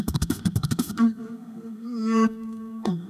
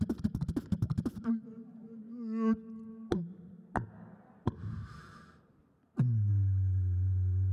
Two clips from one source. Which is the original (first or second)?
second